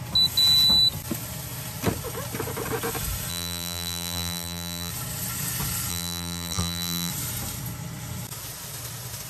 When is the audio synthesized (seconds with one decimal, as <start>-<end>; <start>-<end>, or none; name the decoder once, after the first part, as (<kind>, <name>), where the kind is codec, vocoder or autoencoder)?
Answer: 3.3-4.9 (vocoder, BigVGAN v2); 5.9-7.1